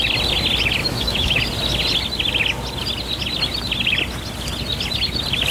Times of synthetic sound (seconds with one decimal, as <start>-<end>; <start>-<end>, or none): 0.8-1.4